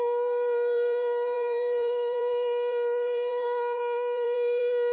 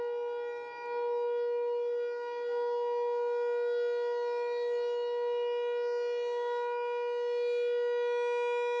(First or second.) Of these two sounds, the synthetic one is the first